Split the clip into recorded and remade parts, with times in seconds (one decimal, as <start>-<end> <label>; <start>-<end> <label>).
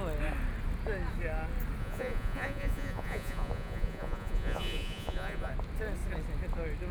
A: 0.0-1.8 recorded; 1.8-5.5 remade; 5.5-6.9 recorded